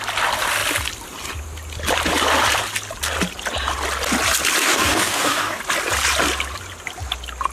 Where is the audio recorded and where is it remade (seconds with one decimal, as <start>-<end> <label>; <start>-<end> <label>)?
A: 0.0-4.6 recorded; 4.6-5.6 remade; 5.6-7.5 recorded